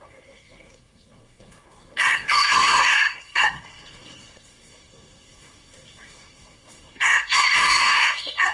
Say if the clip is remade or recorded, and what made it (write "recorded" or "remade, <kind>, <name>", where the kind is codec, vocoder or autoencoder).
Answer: remade, codec, SNAC